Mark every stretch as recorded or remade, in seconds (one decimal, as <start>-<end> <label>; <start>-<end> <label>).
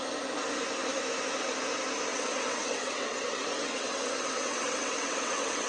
0.0-2.1 recorded; 2.1-5.7 remade